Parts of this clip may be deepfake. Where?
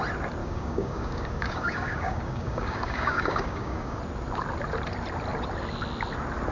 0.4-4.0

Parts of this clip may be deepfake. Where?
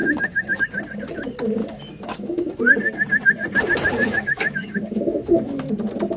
0.0-0.6; 1.6-2.6; 4.0-5.7